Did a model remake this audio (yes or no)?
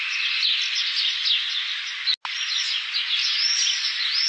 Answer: no